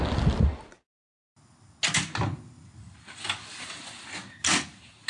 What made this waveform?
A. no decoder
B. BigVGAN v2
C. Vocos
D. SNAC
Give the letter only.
A